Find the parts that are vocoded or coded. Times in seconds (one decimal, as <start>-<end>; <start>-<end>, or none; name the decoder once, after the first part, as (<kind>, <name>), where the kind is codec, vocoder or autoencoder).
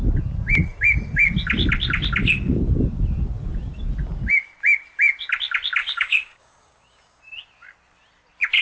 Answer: 5.8-7.2 (codec, DAC)